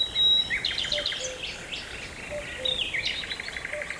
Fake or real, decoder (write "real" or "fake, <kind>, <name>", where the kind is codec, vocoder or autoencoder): real